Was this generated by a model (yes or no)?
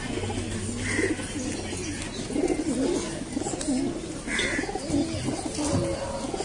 no